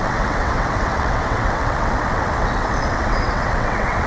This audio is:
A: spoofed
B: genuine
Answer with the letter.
A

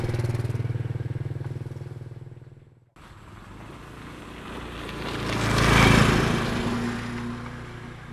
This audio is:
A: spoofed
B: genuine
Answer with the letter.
B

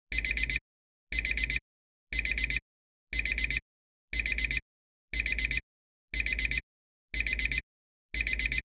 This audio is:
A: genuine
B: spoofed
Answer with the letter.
A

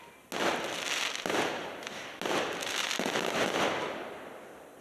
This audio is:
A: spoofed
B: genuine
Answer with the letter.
B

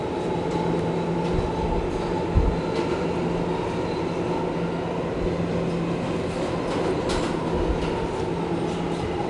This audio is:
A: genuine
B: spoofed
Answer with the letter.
A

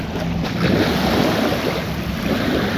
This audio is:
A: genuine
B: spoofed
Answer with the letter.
A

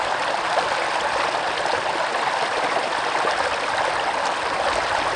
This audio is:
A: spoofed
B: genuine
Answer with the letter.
B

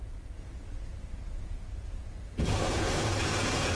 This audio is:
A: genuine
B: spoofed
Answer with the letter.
B